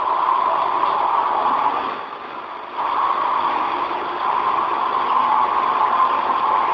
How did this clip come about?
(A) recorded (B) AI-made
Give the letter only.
A